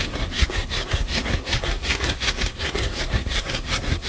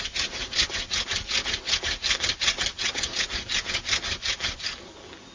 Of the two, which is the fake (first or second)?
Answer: first